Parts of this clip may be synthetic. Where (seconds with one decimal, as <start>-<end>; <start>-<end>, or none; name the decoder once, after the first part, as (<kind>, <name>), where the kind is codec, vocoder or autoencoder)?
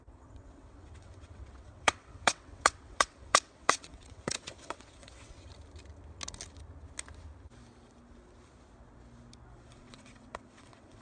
0.0-5.5 (vocoder, WaveNeXt); 9.7-11.0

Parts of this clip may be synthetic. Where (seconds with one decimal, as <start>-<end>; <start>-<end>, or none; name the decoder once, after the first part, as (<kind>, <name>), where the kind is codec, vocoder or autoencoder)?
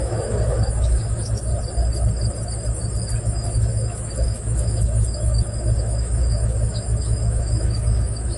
0.0-1.5 (autoencoder, DAC-VAE); 3.2-8.4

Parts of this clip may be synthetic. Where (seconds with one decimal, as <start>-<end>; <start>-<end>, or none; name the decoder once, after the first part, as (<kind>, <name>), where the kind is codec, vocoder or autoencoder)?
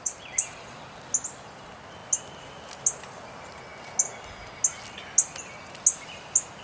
none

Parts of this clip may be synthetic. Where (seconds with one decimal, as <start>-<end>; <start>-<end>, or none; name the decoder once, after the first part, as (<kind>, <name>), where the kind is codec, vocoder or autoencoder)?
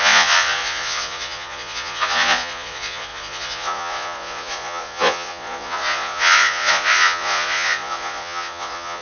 0.0-9.0 (vocoder, Vocos)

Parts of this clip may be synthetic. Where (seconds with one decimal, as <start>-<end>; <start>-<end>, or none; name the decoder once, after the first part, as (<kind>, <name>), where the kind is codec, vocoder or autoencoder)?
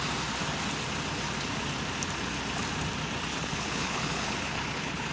3.3-5.1 (codec, HILCodec)